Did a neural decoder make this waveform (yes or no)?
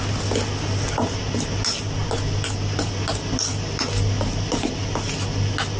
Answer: no